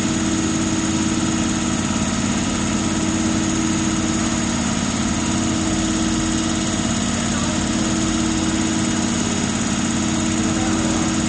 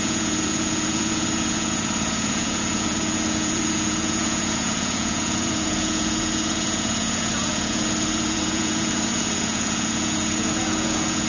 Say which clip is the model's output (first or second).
second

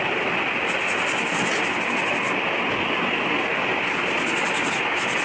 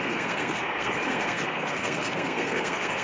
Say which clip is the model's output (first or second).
second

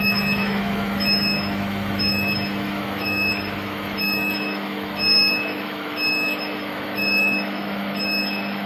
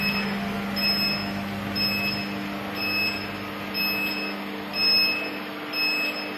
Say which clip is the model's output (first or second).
first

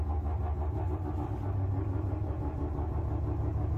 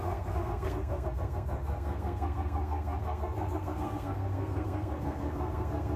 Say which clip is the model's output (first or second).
second